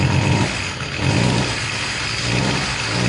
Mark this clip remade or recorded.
recorded